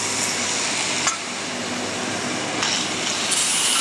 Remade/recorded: recorded